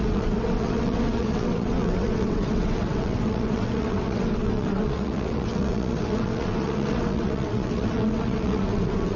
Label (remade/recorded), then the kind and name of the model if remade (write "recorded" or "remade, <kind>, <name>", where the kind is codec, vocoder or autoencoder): remade, vocoder, WaveNeXt